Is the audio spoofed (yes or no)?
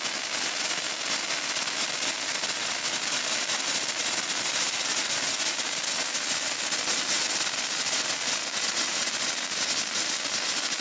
no